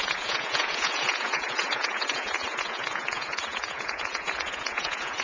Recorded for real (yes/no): no